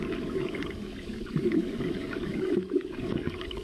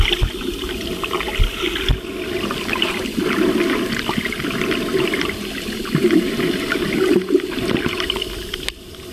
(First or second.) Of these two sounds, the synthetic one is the first